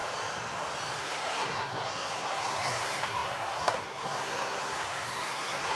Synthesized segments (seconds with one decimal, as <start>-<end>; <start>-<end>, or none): 1.0-5.8